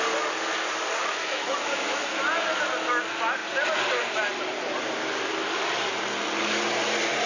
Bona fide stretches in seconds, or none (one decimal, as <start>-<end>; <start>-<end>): 0.0-1.0; 2.2-7.3